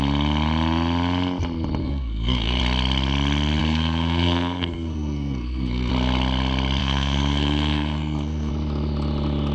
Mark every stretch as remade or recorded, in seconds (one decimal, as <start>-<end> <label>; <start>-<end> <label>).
0.0-1.8 recorded; 1.8-2.6 remade; 2.6-3.6 recorded; 3.6-5.9 remade; 5.9-6.8 recorded; 6.8-8.5 remade; 8.5-9.5 recorded